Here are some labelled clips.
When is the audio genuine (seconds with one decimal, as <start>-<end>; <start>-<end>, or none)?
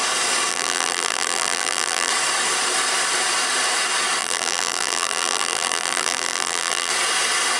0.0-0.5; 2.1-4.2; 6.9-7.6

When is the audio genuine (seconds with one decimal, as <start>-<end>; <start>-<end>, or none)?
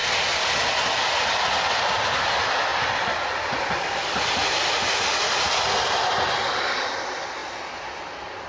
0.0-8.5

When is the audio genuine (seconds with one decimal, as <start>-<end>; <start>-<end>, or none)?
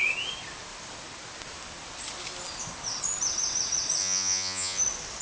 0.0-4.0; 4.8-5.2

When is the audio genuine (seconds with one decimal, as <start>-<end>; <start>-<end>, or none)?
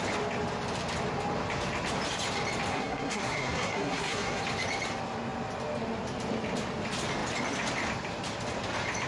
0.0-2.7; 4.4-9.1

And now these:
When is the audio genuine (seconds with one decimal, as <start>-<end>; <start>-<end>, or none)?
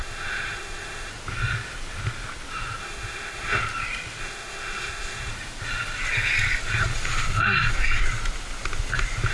1.1-2.8; 3.6-4.2; 5.3-9.3